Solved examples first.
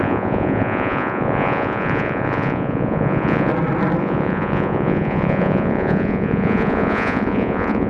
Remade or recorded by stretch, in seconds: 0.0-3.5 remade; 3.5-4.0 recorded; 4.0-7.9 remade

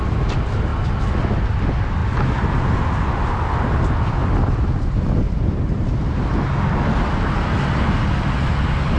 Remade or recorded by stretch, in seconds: 0.0-9.0 recorded

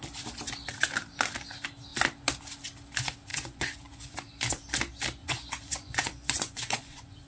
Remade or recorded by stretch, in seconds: 0.0-3.3 recorded; 3.3-4.1 remade; 4.1-5.2 recorded; 5.2-7.3 remade

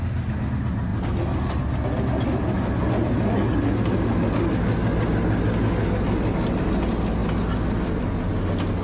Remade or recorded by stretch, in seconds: 0.0-8.8 recorded

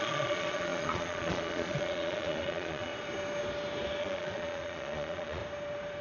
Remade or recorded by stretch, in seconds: 0.0-2.9 remade; 2.9-4.0 recorded; 4.0-5.4 remade; 5.4-6.0 recorded

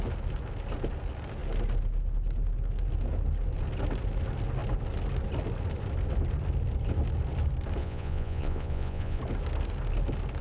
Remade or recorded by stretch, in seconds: 0.0-7.8 recorded; 7.8-9.2 remade; 9.2-10.4 recorded